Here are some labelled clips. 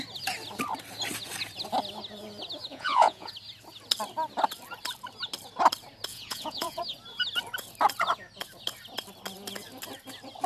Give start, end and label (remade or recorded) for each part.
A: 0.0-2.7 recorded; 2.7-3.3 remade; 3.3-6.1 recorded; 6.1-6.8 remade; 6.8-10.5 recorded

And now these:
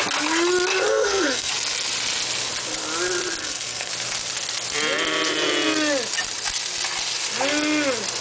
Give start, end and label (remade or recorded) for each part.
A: 0.0-0.9 recorded; 0.9-1.5 remade; 1.5-3.4 recorded; 3.4-3.9 remade; 3.9-8.2 recorded

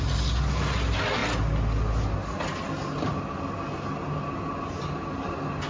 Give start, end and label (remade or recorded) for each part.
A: 0.0-5.7 recorded